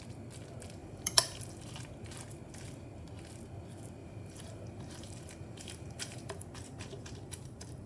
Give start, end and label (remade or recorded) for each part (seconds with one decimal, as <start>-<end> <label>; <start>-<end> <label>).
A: 0.0-0.8 recorded; 0.8-1.6 remade; 1.6-4.0 recorded; 4.0-7.9 remade